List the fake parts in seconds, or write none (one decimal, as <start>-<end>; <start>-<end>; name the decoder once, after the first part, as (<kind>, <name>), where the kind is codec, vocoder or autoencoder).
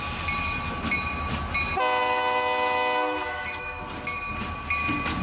2.0-3.8 (autoencoder, DAC-VAE)